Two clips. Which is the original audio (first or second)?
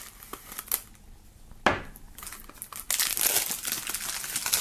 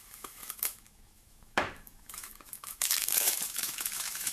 first